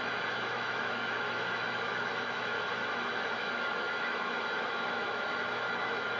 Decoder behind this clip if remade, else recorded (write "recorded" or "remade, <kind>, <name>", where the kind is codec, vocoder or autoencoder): remade, autoencoder, DAC-VAE